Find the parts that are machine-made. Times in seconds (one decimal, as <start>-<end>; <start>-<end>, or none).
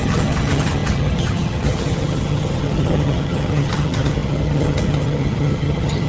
0.0-6.1